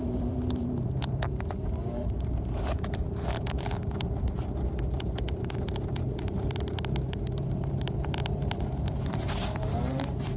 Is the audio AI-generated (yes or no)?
yes